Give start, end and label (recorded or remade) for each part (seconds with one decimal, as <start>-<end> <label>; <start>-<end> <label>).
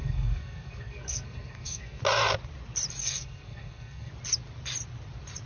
0.0-2.0 remade; 2.0-3.0 recorded; 3.0-4.1 remade; 4.1-5.5 recorded